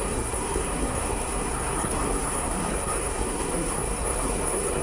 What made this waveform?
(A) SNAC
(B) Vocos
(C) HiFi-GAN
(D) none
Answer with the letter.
A